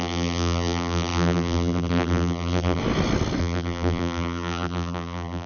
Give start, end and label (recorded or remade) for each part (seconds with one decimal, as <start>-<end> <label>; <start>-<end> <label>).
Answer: 0.0-2.8 remade; 2.8-3.4 recorded; 3.4-5.5 remade